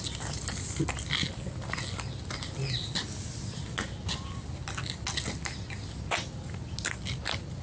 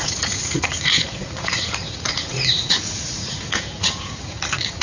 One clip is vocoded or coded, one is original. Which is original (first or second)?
first